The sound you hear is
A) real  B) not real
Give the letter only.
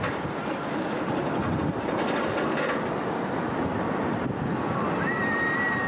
A